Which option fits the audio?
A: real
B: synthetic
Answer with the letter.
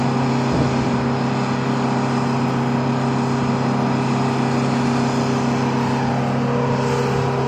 A